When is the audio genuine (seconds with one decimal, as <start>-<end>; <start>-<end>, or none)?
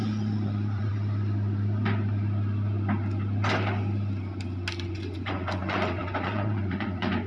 0.9-4.9